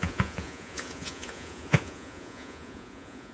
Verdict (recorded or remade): remade